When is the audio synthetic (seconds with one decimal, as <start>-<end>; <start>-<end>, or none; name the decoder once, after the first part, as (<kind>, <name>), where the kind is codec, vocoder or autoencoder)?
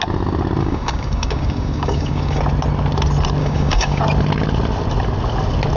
0.6-2.4 (codec, DAC); 3.4-4.0